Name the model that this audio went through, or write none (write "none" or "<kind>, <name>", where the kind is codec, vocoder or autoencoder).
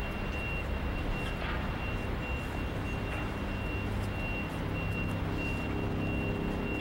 none